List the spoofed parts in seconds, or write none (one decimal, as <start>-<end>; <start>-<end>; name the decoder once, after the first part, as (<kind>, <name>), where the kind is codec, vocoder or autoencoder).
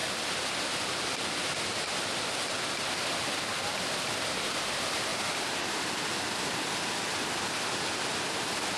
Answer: none